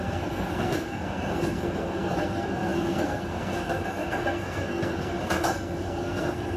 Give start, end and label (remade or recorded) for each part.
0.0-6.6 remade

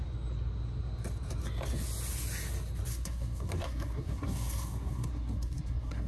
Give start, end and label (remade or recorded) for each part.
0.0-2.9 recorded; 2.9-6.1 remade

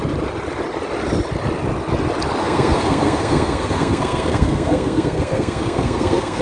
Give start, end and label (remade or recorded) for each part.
0.0-2.4 recorded; 2.4-6.4 remade

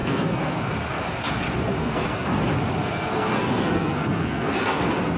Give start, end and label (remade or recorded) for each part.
0.0-0.7 remade; 0.7-1.8 recorded; 1.8-2.4 remade; 2.4-2.8 recorded; 2.8-4.8 remade; 4.8-5.2 recorded

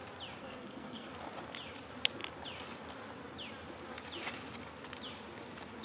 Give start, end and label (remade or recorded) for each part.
0.0-0.4 recorded; 0.4-1.1 remade; 1.1-5.8 recorded

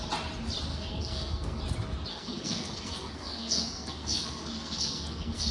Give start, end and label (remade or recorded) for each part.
0.0-0.7 recorded; 0.7-1.6 remade; 1.6-2.1 recorded; 2.1-5.5 remade

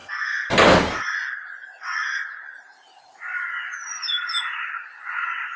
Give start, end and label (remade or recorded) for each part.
0.0-0.5 remade; 0.5-5.6 recorded